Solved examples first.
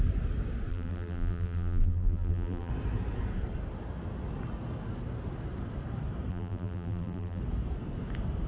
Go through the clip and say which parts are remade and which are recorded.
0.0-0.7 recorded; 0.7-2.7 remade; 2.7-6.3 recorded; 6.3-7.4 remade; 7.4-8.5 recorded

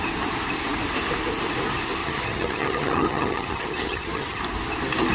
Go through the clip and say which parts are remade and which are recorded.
0.0-2.0 recorded; 2.0-4.4 remade; 4.4-5.1 recorded

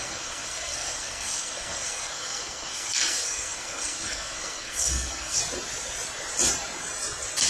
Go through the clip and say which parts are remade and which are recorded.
0.0-5.4 remade; 5.4-7.5 recorded

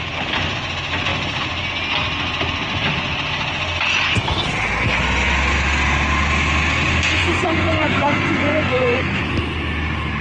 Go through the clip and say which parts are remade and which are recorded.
0.0-7.2 recorded; 7.2-9.2 remade; 9.2-10.2 recorded

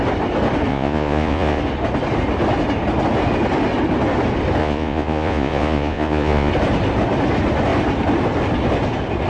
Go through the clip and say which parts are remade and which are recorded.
0.0-0.7 recorded; 0.7-1.6 remade; 1.6-4.6 recorded; 4.6-6.5 remade; 6.5-9.3 recorded